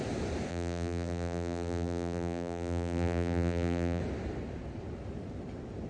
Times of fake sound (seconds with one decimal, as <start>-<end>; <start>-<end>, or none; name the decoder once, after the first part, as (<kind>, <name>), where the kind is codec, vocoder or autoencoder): 0.5-4.0 (vocoder, BigVGAN v2)

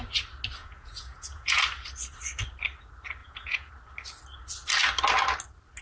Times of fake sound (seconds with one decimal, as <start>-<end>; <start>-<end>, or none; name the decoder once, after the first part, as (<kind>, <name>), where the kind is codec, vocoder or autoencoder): 0.6-1.6 (vocoder, Vocos); 3.2-3.7

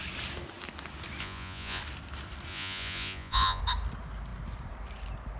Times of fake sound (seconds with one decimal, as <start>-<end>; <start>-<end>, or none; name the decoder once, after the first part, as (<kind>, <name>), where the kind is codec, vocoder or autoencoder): 1.2-1.8 (vocoder, Vocos); 2.5-3.6

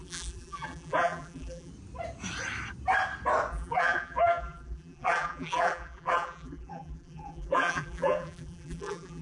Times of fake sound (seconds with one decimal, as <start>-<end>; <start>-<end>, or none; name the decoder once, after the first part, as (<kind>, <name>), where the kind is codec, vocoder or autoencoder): 0.0-1.7 (vocoder, BigVGAN v2); 3.5-9.2

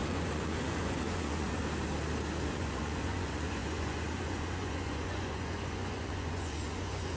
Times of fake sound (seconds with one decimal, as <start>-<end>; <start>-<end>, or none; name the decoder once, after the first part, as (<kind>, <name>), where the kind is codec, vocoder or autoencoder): 0.0-1.6 (vocoder, Vocos); 2.5-7.2